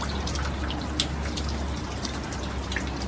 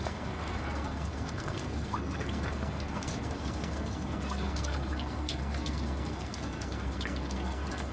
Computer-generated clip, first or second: second